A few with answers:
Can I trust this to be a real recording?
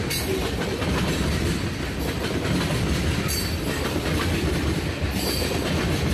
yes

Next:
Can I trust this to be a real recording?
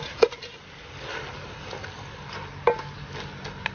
yes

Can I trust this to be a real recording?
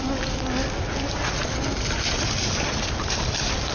yes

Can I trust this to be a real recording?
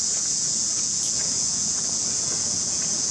no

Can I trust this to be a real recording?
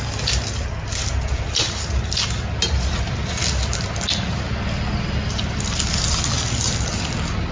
yes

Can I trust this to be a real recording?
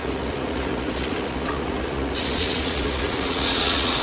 no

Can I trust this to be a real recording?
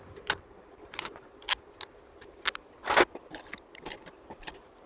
yes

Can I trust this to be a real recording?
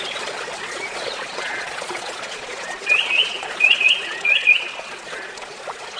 no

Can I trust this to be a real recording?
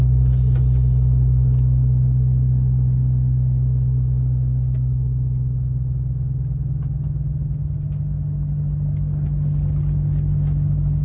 yes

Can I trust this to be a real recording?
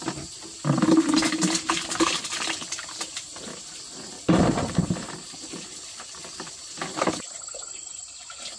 yes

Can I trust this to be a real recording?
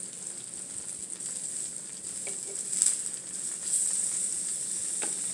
yes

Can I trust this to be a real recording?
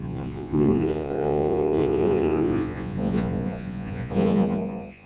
no